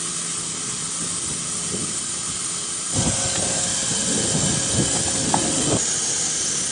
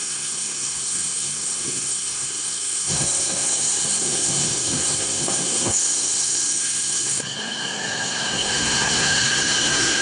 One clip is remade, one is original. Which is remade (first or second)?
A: second